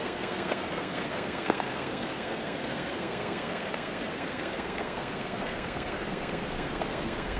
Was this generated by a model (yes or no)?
yes